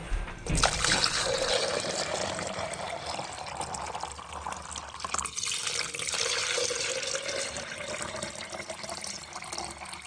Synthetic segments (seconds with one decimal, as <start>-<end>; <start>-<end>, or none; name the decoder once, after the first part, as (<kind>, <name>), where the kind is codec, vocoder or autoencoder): none